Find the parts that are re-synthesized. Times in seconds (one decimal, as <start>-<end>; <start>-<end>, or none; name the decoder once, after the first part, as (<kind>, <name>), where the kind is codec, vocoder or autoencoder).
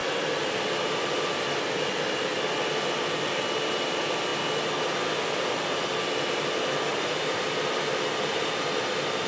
none